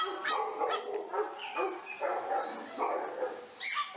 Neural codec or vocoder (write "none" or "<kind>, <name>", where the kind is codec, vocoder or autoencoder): none